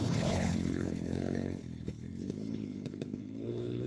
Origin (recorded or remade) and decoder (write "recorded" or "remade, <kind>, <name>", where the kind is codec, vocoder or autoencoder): remade, codec, HILCodec